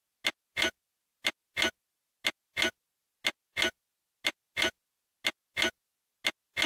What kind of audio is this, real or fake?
real